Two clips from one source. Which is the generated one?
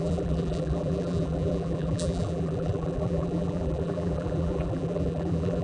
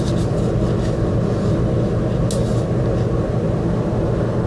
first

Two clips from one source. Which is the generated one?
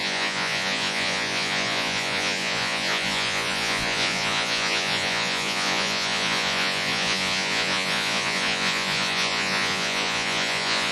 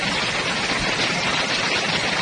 first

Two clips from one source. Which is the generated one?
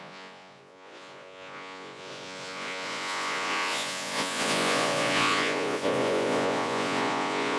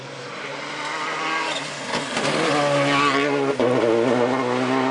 first